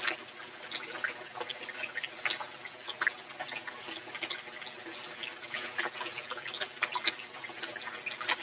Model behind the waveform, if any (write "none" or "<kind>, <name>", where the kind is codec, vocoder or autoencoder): none